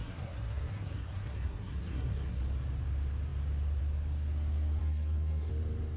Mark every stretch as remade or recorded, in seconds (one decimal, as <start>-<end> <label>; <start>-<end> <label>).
0.0-2.4 remade; 2.4-4.8 recorded; 4.8-5.5 remade; 5.5-6.0 recorded